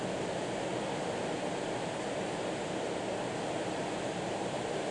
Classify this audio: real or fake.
real